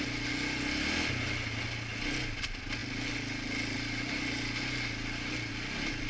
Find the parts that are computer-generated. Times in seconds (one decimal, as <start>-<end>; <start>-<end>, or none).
none